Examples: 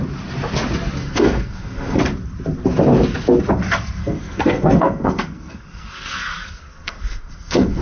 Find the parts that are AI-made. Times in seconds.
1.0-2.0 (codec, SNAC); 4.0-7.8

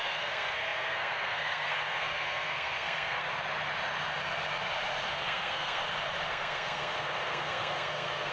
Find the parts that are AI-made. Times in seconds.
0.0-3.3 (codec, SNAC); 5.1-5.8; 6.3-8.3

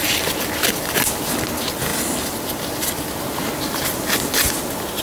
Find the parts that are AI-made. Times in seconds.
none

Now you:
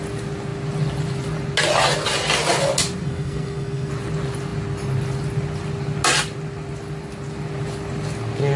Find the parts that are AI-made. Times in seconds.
3.0-3.9 (codec, SNAC)

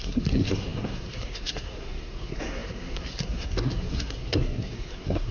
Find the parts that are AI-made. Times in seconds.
0.0-5.3 (codec, SNAC)